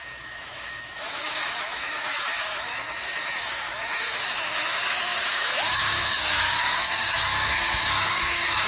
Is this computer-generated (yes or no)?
yes